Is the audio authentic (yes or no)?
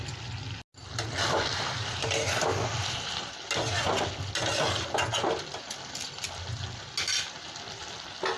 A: yes